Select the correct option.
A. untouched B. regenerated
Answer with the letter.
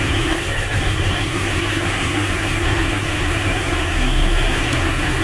B